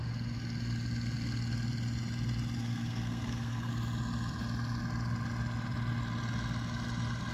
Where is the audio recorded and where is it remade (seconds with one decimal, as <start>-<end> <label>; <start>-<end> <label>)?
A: 0.0-2.6 recorded; 2.6-3.7 remade; 3.7-7.3 recorded